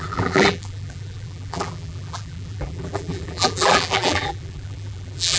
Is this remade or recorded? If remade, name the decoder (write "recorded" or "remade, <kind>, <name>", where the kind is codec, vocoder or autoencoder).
remade, vocoder, BigVGAN v2